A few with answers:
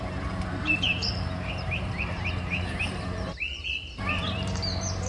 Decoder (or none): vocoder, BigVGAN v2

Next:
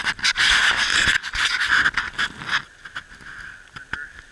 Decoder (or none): none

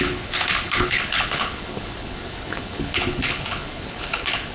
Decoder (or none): codec, HILCodec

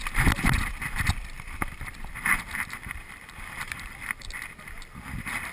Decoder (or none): vocoder, BigVGAN v2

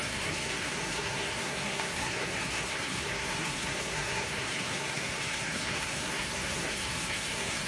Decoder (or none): codec, SNAC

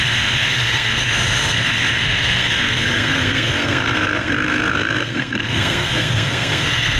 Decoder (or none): codec, SNAC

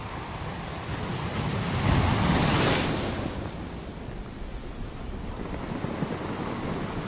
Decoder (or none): none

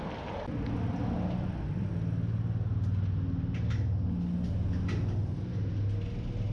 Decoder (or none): none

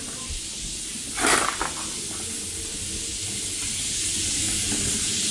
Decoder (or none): none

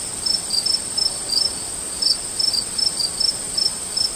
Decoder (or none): none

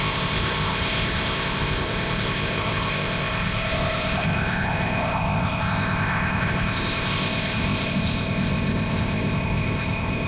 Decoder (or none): codec, ZipCodec